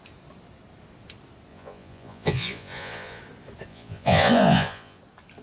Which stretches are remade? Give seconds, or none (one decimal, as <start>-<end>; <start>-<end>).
1.5-3.2; 3.7-5.0